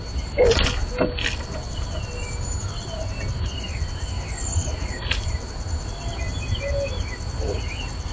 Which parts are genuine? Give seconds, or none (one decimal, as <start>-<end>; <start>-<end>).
0.0-8.1